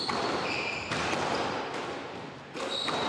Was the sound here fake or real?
real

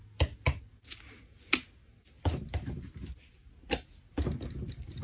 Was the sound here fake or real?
real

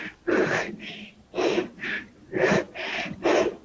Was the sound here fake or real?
real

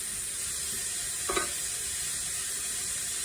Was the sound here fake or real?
real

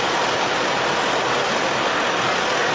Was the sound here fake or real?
real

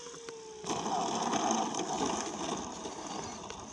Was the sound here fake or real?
real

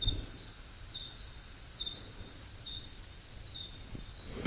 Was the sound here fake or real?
real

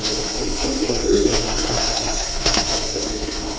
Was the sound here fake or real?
fake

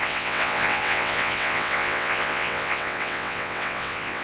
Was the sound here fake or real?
fake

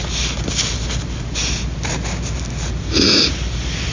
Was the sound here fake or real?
real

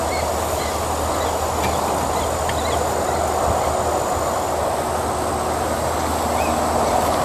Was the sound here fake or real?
real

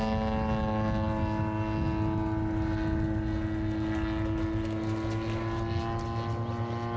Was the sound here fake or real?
real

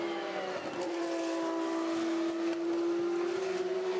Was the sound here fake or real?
real